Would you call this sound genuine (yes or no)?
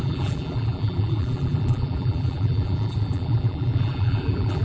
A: no